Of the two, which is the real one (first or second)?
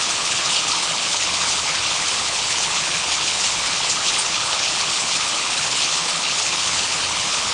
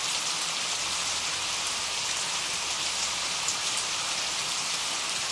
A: second